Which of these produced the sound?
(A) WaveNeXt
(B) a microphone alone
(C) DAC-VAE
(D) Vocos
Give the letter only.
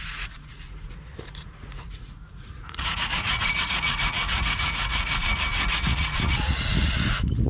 D